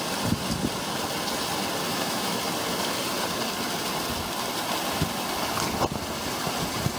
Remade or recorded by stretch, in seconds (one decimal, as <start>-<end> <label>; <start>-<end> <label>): 0.0-1.9 recorded; 1.9-2.4 remade; 2.4-7.0 recorded